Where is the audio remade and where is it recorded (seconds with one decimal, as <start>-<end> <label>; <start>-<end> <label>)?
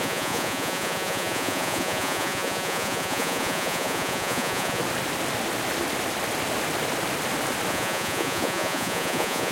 0.0-4.8 remade; 4.8-7.7 recorded; 7.7-9.5 remade